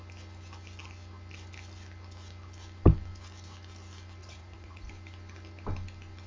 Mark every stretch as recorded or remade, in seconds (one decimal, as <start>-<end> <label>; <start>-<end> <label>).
0.0-4.2 recorded; 4.2-4.9 remade; 4.9-6.3 recorded